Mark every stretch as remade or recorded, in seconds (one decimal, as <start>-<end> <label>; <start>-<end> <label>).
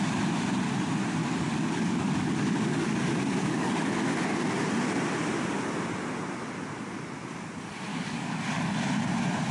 0.0-1.2 recorded; 1.2-4.1 remade; 4.1-7.9 recorded; 7.9-8.4 remade; 8.4-9.5 recorded